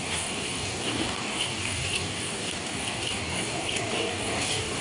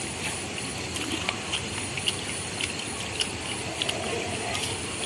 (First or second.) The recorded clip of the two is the second